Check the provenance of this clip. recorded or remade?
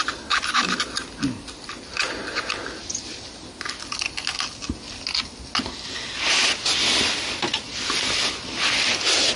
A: recorded